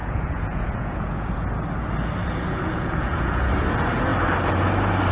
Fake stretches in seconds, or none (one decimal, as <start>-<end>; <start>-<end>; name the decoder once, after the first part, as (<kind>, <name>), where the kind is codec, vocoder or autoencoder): 0.0-1.6 (vocoder, Vocos); 2.2-3.5